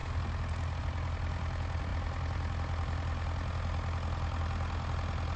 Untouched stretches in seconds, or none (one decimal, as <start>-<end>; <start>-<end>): 0.0-5.4